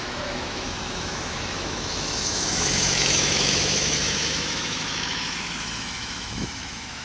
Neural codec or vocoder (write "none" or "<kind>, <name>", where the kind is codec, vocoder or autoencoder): autoencoder, DAC-VAE